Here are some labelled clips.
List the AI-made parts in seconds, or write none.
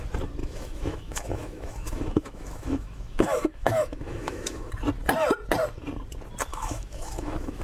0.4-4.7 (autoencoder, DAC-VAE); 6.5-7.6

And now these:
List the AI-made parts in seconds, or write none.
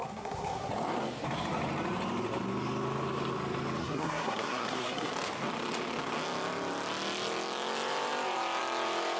0.0-0.7 (codec, SNAC); 3.8-5.1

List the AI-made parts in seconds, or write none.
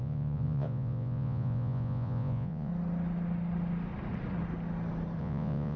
0.0-2.7 (vocoder, Vocos); 5.2-5.8